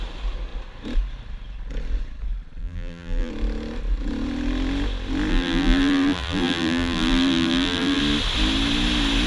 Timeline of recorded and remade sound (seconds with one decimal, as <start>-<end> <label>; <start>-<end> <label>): 0.0-2.6 recorded; 2.6-3.3 remade; 3.3-5.3 recorded; 5.3-8.0 remade; 8.0-9.3 recorded